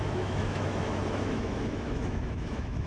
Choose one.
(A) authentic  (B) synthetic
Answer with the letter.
B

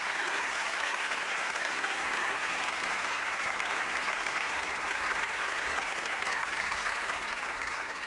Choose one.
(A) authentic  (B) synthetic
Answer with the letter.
B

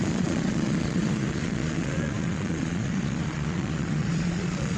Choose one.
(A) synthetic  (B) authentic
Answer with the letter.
A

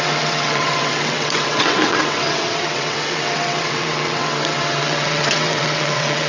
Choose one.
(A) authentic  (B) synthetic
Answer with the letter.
B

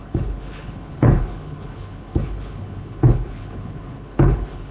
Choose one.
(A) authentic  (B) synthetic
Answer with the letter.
B